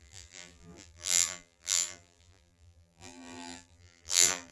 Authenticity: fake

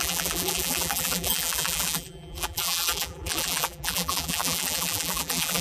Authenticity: fake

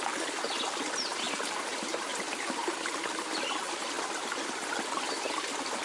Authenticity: fake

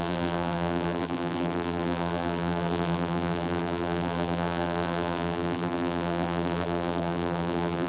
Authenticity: fake